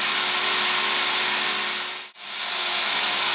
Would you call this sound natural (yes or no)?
yes